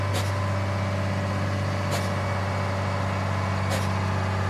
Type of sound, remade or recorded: recorded